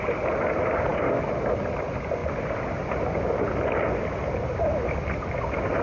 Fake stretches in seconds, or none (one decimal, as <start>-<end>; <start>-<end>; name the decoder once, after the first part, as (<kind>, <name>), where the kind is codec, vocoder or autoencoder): none